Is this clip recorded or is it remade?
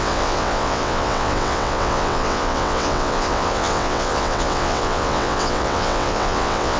remade